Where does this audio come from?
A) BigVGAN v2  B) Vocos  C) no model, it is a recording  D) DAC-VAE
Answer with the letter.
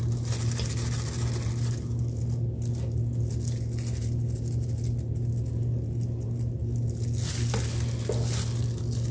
C